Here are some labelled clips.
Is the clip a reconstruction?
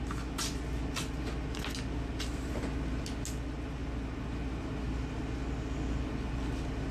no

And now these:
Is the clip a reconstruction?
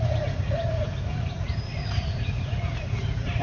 yes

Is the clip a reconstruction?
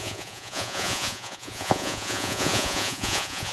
yes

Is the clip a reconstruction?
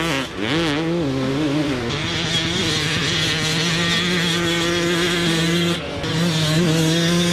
no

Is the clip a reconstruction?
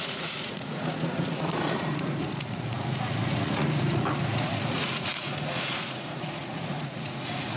yes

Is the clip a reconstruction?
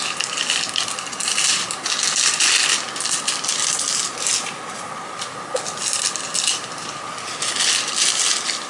no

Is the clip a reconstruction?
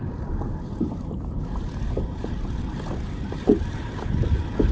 no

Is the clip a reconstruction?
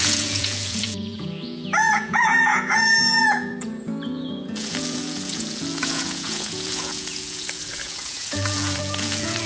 yes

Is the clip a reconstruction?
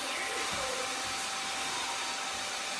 no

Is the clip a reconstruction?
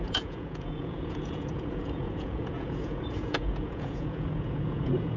yes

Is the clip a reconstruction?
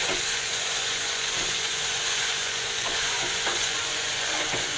yes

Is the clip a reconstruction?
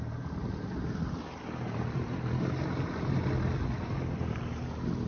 no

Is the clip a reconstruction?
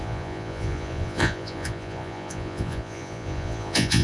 yes